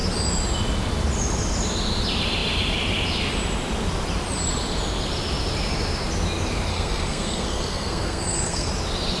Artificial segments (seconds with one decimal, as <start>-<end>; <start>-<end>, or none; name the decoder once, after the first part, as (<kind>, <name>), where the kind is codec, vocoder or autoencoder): 6.7-8.7 (codec, SNAC)